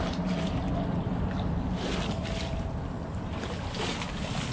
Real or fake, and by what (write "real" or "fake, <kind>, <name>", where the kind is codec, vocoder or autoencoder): real